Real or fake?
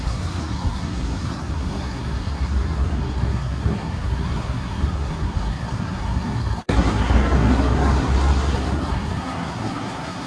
fake